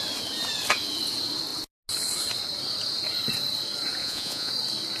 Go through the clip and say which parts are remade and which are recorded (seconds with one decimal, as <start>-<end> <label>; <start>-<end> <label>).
0.0-4.0 recorded; 4.0-4.5 remade; 4.5-5.0 recorded